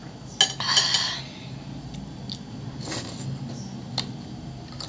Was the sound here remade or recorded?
recorded